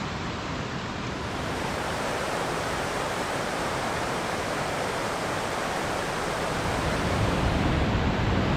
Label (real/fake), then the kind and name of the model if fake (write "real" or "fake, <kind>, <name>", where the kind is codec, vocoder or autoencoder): fake, vocoder, BigVGAN v2